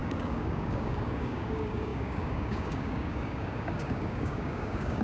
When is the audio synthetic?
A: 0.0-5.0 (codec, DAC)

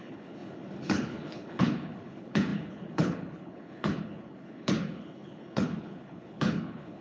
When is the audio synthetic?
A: 0.0-7.0 (codec, HILCodec)

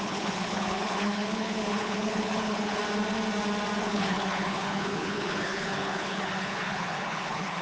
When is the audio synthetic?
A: 0.0-2.8 (codec, HILCodec); 3.8-7.6

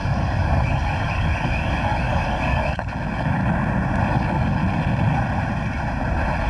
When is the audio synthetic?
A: 0.0-3.4 (codec, DAC); 4.1-4.6

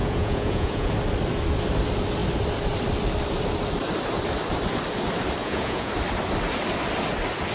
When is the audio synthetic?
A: 0.0-0.9 (vocoder, Vocos); 5.4-5.9

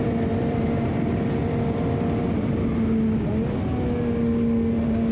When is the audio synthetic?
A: 0.0-0.9 (vocoder, BigVGAN v2); 1.4-2.8